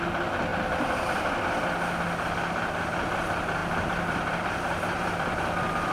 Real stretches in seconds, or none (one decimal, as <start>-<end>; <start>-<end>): 0.0-0.5; 1.2-3.6